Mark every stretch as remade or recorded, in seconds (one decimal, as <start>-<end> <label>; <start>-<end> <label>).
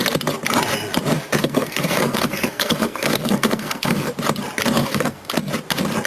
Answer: 0.0-1.4 recorded; 1.4-4.1 remade; 4.1-4.8 recorded; 4.8-5.3 remade; 5.3-6.1 recorded